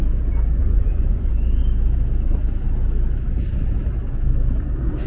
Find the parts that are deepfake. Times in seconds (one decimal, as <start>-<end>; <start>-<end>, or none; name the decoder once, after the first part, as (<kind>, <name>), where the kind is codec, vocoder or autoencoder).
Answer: 0.6-1.3 (vocoder, Vocos)